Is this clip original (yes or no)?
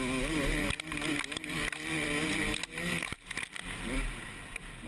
yes